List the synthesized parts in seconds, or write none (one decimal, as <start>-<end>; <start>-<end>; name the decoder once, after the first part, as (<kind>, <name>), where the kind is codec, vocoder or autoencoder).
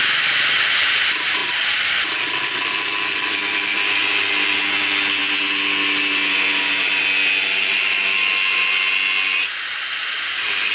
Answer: none